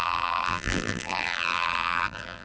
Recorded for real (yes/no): no